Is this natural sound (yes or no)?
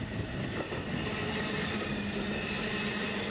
yes